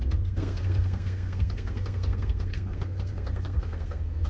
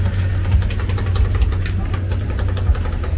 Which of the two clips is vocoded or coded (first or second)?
first